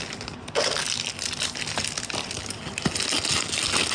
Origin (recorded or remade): recorded